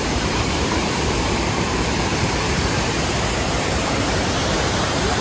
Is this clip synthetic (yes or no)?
yes